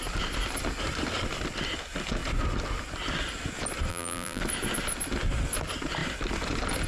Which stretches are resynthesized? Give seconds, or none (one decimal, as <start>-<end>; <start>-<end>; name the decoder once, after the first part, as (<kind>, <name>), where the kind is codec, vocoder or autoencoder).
3.9-4.4 (vocoder, BigVGAN v2)